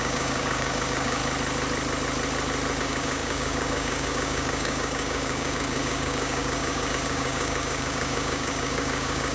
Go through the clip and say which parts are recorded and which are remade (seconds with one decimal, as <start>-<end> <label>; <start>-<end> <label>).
0.0-1.2 remade; 1.2-2.8 recorded; 2.8-9.3 remade